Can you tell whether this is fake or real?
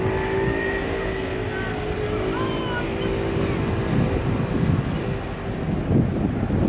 real